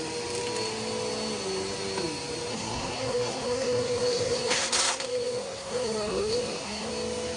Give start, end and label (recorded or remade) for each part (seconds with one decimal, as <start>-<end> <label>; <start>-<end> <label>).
0.0-2.5 recorded; 2.5-6.9 remade; 6.9-7.4 recorded